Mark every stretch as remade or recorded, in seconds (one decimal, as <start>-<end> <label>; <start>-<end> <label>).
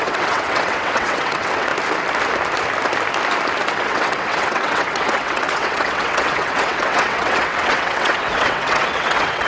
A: 0.0-1.7 remade; 1.7-3.7 recorded; 3.7-9.5 remade